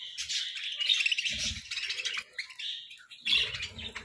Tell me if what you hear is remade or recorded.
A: recorded